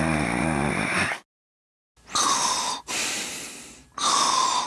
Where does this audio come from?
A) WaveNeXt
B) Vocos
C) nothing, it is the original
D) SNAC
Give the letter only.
C